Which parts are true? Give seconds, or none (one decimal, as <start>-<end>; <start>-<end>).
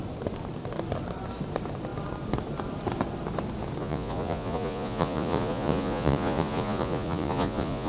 0.0-3.8